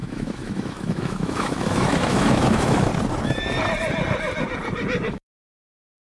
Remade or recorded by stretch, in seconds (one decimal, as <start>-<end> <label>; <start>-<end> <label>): 0.0-2.9 remade; 2.9-5.1 recorded; 5.1-6.0 remade